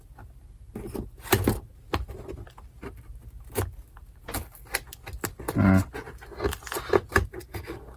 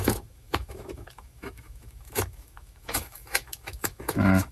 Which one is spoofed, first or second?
second